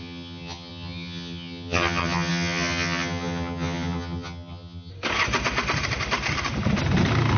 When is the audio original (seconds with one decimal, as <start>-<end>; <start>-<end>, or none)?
4.9-7.4